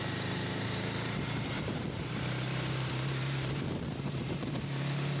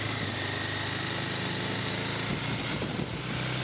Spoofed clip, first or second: first